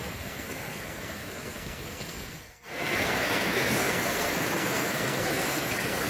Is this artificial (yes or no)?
yes